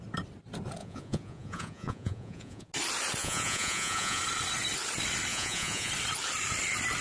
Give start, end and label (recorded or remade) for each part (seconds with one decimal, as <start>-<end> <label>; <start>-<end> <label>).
0.0-0.8 recorded; 0.8-2.7 remade; 2.7-3.2 recorded; 3.2-4.2 remade; 4.2-5.3 recorded; 5.3-5.9 remade; 5.9-7.0 recorded